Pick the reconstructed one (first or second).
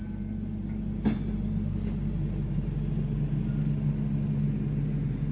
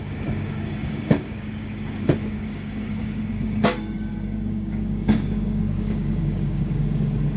second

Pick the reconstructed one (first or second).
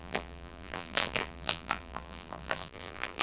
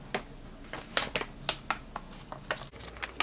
first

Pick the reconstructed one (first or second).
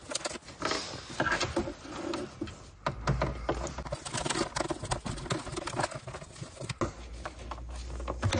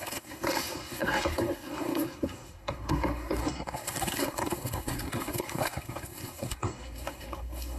second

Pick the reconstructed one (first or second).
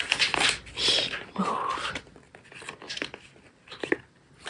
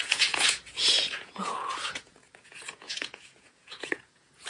second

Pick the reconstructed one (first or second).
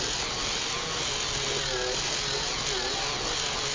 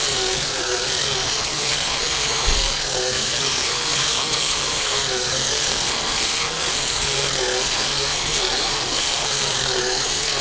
second